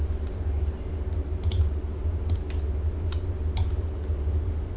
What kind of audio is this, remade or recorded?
recorded